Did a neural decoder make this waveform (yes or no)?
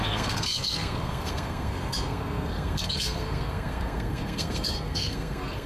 yes